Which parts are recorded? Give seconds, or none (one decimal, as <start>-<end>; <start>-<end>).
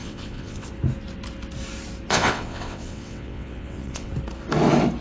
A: 0.7-2.1; 4.1-5.0